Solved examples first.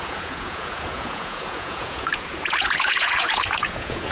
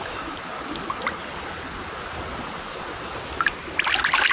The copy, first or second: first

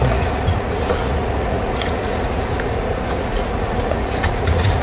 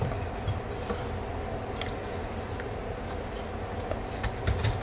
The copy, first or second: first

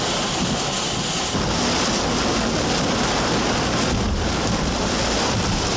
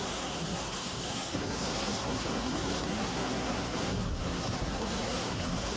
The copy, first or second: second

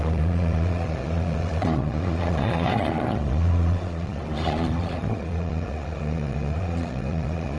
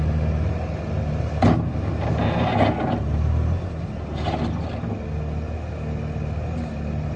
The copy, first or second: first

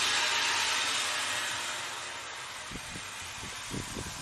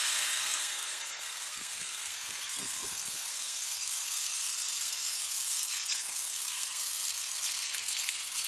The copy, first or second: second